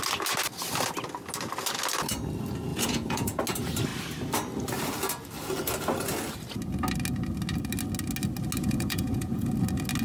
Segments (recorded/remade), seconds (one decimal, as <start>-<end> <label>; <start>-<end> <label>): 0.0-2.7 recorded; 2.7-3.4 remade; 3.4-8.6 recorded; 8.6-9.5 remade; 9.5-10.0 recorded